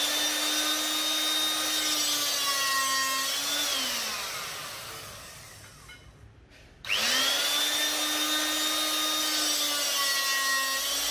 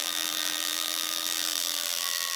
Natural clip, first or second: first